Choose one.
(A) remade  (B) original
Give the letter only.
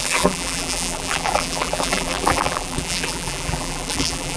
A